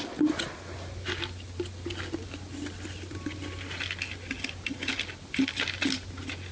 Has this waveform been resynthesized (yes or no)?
no